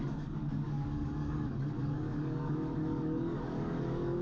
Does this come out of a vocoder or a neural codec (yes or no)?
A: yes